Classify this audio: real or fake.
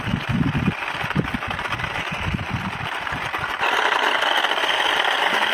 real